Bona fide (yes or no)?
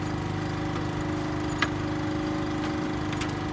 yes